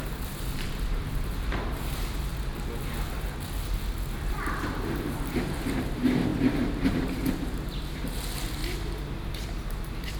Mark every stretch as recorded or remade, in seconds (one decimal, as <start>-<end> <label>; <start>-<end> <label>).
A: 0.0-2.3 remade; 2.3-4.1 recorded; 4.1-8.6 remade; 8.6-9.3 recorded; 9.3-10.2 remade